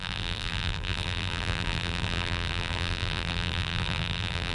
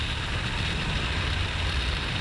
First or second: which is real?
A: second